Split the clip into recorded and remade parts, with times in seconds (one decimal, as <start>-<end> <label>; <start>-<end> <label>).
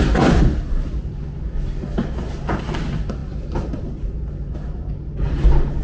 0.0-5.8 recorded